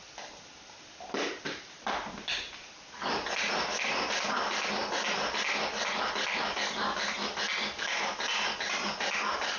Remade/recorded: recorded